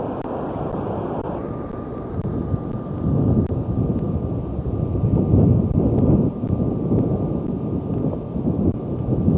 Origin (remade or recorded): recorded